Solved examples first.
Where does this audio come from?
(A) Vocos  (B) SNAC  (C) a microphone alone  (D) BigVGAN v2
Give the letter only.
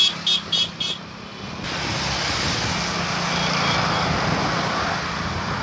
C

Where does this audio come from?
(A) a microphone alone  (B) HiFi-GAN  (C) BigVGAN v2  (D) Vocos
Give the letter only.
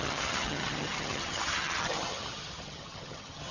B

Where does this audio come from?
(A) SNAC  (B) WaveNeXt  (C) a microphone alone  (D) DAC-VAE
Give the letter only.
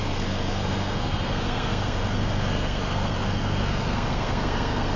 A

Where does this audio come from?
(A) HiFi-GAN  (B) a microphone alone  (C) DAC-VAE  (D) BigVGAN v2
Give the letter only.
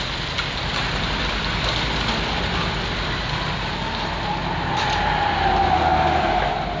B